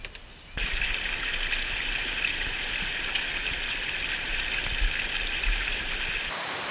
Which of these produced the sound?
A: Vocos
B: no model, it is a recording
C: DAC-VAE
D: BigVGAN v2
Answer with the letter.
B